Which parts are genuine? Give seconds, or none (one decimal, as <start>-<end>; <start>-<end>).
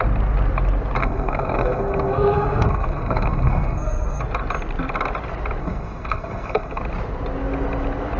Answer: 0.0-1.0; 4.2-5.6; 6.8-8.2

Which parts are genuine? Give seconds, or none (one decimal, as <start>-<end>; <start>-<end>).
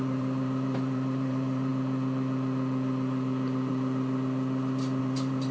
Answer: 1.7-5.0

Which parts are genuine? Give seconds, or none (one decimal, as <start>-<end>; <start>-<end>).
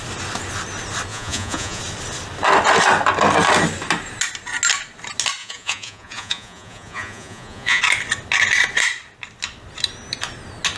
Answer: 0.0-1.1; 1.8-5.4; 7.8-10.8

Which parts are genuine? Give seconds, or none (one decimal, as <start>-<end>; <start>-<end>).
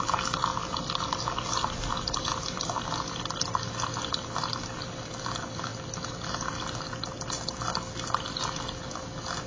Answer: 0.0-9.5